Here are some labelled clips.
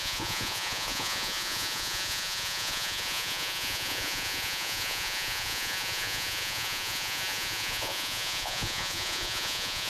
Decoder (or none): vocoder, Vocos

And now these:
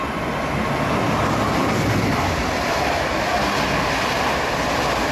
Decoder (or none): none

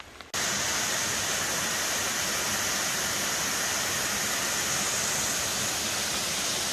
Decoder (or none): none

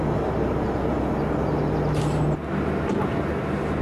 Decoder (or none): none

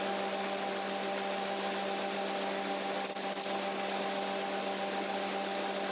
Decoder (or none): none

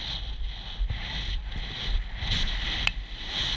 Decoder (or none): none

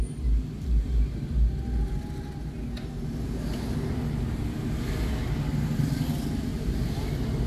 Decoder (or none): none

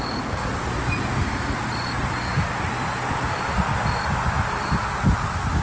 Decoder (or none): none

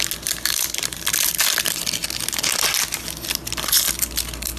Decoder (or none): none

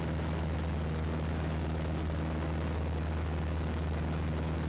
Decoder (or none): autoencoder, DAC-VAE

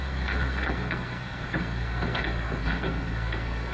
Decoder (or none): codec, SNAC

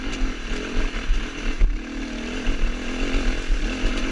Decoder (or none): none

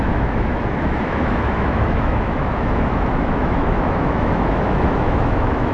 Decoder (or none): autoencoder, DAC-VAE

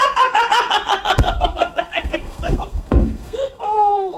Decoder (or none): codec, SNAC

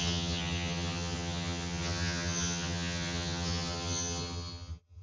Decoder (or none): vocoder, HiFi-GAN